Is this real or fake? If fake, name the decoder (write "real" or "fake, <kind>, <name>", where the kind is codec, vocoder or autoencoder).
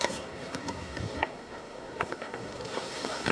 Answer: fake, codec, SNAC